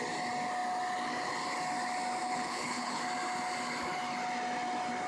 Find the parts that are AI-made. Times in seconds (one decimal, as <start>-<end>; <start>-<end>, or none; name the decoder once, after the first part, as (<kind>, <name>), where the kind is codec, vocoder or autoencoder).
2.2-3.0 (codec, HILCodec)